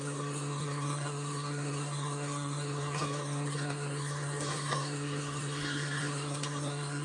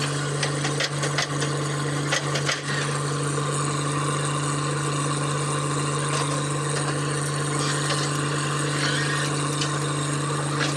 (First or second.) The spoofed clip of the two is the first